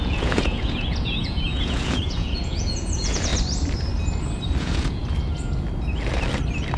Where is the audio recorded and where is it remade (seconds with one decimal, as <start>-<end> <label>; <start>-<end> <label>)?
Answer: 0.0-3.3 remade; 3.3-4.6 recorded; 4.6-5.0 remade; 5.0-6.8 recorded